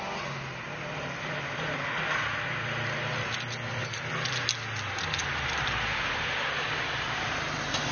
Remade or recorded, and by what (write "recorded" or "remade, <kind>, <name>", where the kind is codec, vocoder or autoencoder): recorded